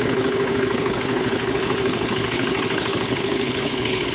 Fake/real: fake